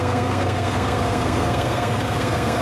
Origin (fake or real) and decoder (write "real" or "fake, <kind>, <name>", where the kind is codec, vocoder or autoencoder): fake, codec, SNAC